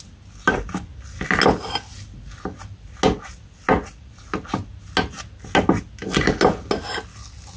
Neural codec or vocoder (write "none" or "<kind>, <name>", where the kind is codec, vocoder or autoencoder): none